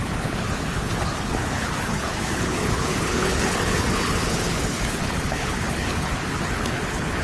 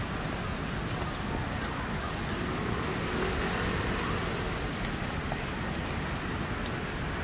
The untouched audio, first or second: second